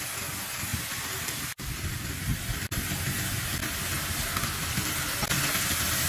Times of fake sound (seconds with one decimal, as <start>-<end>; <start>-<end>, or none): none

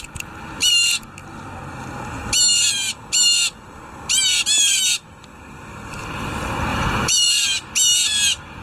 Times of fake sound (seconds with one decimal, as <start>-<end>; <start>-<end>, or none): 6.7-7.4

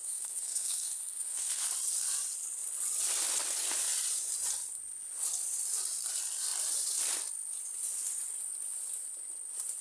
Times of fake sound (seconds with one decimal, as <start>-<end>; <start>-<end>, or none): 0.0-1.7

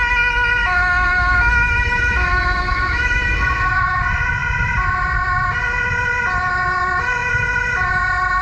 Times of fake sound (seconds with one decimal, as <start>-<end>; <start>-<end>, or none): 0.6-4.0

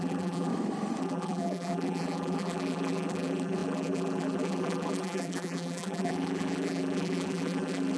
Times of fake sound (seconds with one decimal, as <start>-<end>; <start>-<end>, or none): 0.0-0.5; 1.0-8.0